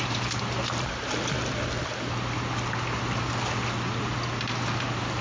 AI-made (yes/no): no